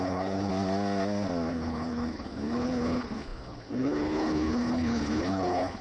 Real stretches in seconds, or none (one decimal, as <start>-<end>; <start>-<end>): 0.5-1.5